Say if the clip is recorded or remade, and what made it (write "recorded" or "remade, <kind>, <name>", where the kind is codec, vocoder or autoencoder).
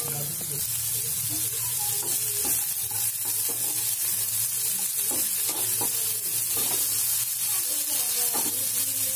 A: recorded